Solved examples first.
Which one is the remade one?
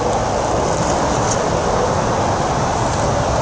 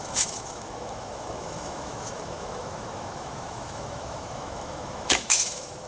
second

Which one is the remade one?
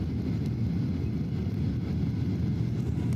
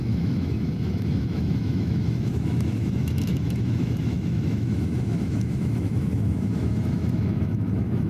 second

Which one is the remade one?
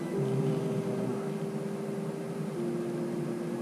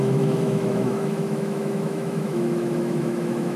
second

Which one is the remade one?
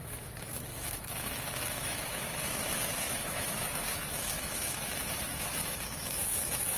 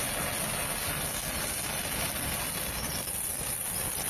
first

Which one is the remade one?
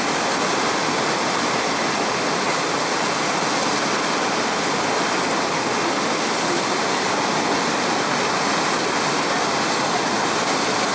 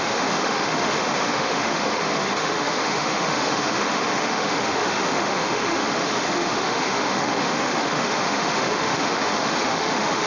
second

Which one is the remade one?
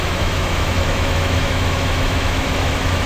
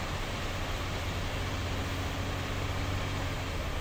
first